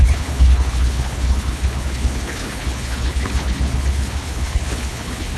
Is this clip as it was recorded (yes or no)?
no